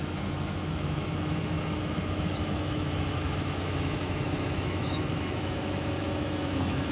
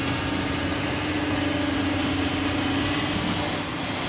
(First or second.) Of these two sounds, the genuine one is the second